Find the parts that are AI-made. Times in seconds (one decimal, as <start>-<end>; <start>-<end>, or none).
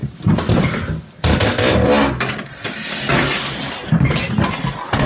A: none